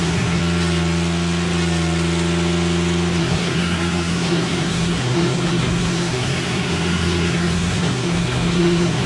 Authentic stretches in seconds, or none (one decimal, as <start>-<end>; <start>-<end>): 0.4-3.2